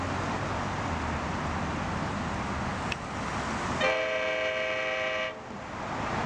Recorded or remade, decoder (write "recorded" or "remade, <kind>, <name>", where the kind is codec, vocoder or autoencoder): recorded